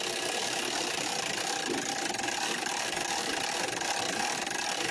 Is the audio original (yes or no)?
yes